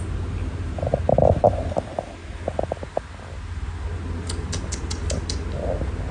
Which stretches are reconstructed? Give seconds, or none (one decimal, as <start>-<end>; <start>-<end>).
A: none

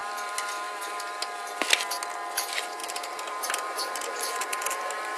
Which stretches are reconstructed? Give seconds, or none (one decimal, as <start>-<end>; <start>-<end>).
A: 2.8-5.2

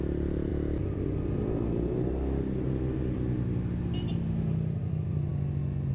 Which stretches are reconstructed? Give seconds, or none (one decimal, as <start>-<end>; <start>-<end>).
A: 0.0-0.5; 4.0-5.3

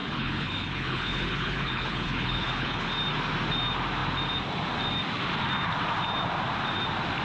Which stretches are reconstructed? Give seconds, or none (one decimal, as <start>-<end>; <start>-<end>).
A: 0.0-2.9

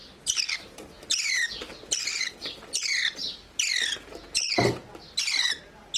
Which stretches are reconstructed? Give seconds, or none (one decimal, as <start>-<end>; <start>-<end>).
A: none

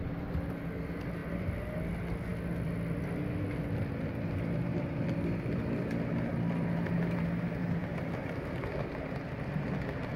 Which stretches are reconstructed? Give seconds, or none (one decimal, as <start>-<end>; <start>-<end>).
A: 7.8-8.5